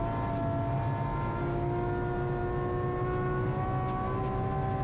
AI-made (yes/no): no